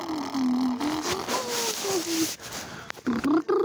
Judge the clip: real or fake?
real